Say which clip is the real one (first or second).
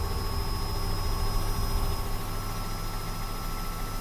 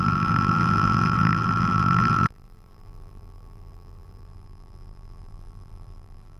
first